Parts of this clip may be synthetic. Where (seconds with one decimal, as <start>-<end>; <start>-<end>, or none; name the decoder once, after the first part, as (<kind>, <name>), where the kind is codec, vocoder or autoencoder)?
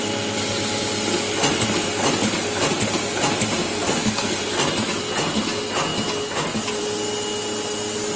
3.6-4.4 (codec, SNAC)